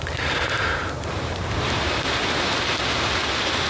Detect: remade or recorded remade